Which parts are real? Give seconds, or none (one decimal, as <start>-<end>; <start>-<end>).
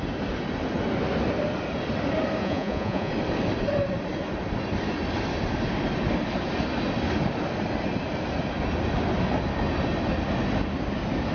0.0-2.4; 3.1-11.3